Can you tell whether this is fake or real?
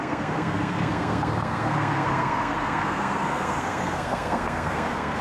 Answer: fake